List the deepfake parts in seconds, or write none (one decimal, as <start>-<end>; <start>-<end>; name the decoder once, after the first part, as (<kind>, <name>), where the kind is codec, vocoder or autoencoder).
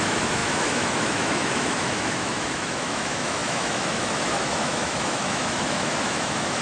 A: 0.0-6.6 (autoencoder, DAC-VAE)